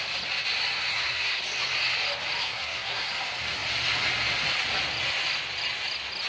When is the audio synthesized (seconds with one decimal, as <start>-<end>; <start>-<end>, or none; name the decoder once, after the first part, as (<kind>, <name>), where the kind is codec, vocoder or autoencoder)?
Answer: 0.9-1.4 (codec, SNAC); 2.4-3.1